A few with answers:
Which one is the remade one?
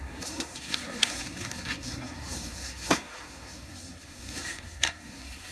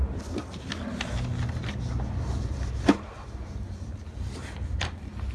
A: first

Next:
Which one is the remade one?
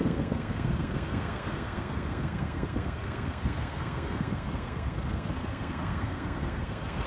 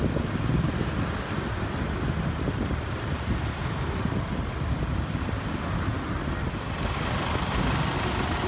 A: first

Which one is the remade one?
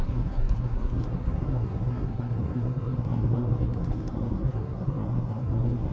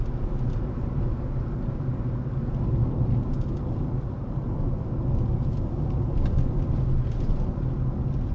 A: first